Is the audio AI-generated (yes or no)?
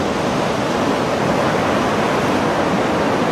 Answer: no